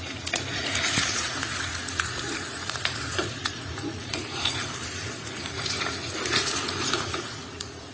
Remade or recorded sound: remade